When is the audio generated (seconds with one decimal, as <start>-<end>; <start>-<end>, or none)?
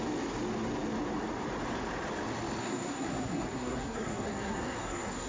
2.6-5.3